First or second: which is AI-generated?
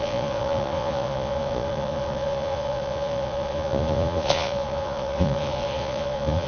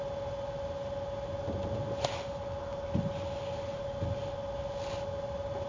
first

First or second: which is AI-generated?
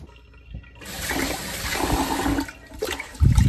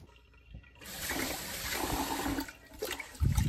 second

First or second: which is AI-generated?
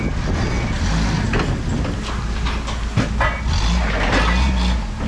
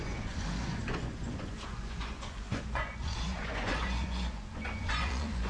second